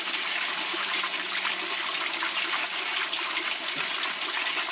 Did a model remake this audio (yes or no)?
no